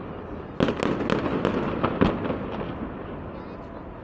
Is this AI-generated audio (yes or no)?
no